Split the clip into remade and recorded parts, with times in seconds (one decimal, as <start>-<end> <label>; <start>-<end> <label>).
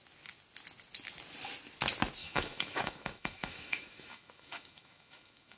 0.0-2.2 recorded; 2.2-5.6 remade